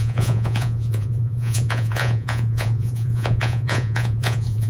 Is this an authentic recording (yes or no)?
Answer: no